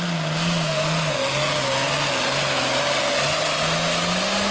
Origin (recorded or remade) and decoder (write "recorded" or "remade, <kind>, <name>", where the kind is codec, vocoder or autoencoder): recorded